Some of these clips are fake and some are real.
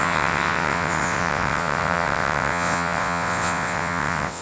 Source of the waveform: fake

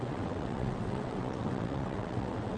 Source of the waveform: fake